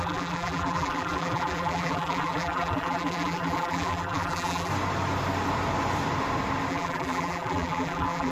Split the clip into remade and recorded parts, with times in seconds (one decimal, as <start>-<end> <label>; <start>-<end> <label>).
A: 0.0-4.7 remade; 4.7-6.7 recorded; 6.7-8.3 remade